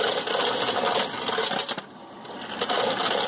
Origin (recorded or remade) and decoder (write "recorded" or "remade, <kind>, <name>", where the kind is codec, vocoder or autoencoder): recorded